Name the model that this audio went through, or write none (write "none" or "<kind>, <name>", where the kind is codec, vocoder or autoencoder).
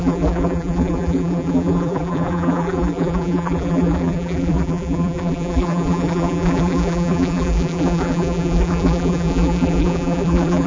vocoder, BigVGAN v2